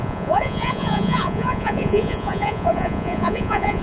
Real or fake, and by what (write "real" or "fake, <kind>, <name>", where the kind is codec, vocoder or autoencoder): fake, vocoder, Vocos